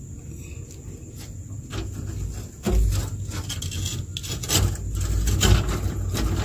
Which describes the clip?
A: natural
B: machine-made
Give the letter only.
A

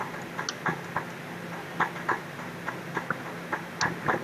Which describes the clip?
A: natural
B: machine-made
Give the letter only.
A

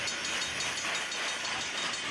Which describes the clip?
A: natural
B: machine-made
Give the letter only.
A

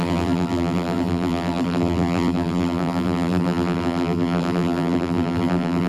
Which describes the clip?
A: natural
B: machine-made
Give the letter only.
B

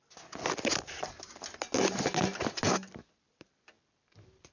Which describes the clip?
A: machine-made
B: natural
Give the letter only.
B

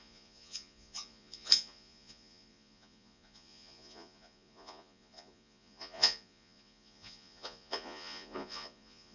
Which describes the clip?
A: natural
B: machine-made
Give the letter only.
B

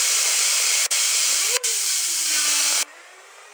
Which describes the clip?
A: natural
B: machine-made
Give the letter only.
B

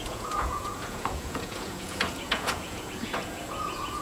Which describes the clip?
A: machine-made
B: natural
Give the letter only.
A